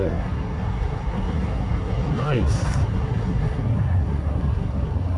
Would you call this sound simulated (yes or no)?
yes